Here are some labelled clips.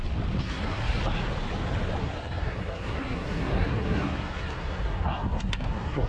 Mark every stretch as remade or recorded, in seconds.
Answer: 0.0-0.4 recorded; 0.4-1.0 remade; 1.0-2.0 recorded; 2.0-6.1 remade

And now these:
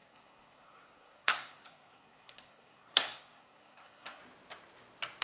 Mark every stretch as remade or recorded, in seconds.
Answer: 0.0-4.2 remade; 4.2-5.2 recorded

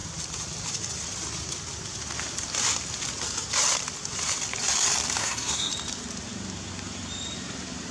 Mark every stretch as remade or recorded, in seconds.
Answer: 0.0-5.2 recorded; 5.2-5.7 remade; 5.7-7.9 recorded

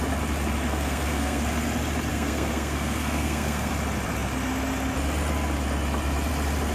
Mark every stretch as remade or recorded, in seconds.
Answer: 0.0-0.7 recorded; 0.7-1.4 remade; 1.4-2.1 recorded; 2.1-3.7 remade; 3.7-6.7 recorded